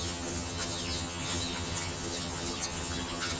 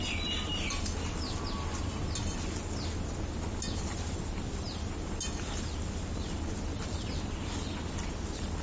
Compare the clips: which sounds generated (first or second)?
first